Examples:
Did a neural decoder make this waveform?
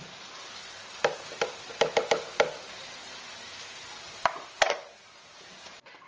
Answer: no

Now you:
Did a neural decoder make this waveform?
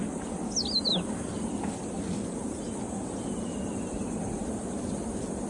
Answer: no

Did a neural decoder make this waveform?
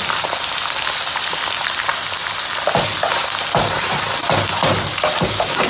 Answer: no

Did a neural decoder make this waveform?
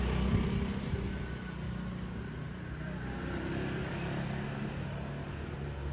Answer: no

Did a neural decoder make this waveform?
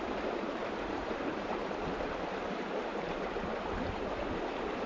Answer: yes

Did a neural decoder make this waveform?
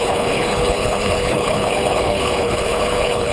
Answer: yes